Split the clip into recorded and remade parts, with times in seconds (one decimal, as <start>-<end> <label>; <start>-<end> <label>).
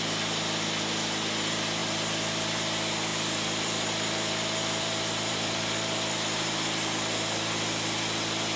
0.0-1.8 recorded; 1.8-2.4 remade; 2.4-3.1 recorded; 3.1-5.6 remade; 5.6-8.6 recorded